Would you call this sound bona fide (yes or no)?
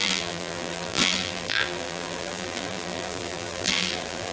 no